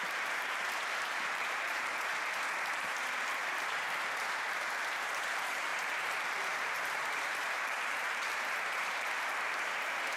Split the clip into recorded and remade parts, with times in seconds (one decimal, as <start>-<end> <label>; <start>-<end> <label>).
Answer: 0.0-2.1 remade; 2.1-2.8 recorded; 2.8-10.2 remade